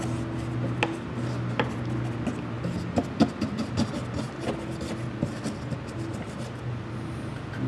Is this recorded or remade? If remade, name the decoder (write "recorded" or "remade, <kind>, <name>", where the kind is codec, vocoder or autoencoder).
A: recorded